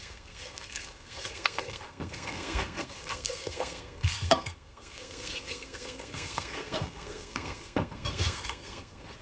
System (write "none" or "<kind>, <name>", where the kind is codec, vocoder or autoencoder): codec, SNAC